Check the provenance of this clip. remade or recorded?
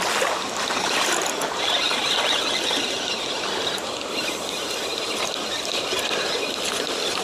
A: recorded